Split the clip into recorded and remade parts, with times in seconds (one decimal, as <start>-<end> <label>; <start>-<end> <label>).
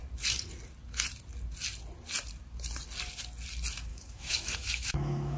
0.0-3.9 recorded; 3.9-5.4 remade